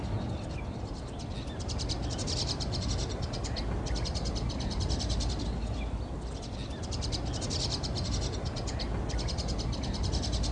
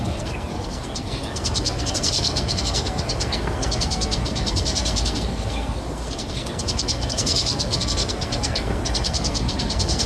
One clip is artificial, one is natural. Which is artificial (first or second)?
second